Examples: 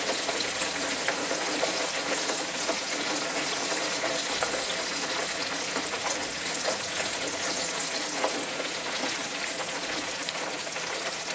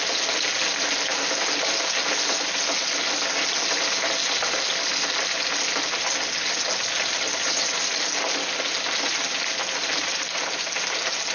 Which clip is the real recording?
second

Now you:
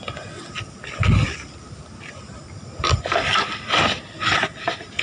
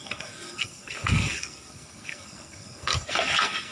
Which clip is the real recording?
first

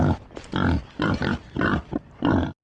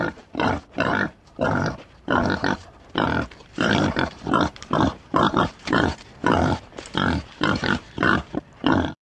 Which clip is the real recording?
first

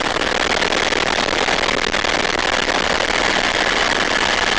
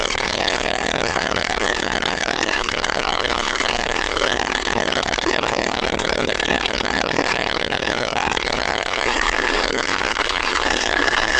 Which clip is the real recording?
first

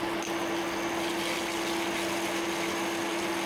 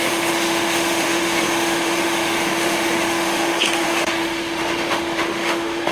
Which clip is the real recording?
first